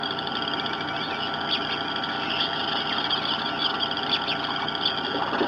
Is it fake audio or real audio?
real